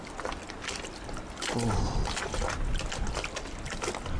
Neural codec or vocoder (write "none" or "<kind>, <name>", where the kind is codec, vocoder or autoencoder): none